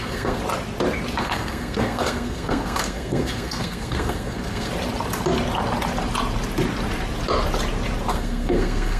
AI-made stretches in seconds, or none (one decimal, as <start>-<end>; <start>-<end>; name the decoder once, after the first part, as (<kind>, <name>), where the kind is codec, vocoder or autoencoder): 0.0-0.4 (codec, SNAC); 1.2-4.7; 8.1-9.0